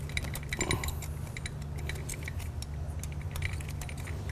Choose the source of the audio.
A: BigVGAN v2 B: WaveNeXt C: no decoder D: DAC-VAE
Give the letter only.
C